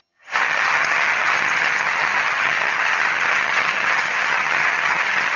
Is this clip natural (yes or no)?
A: no